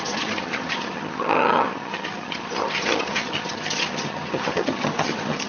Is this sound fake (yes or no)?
yes